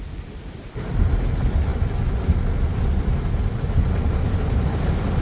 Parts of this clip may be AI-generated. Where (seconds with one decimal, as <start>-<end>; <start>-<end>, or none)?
none